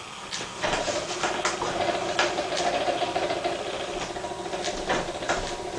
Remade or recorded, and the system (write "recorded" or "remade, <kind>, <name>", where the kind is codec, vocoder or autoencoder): recorded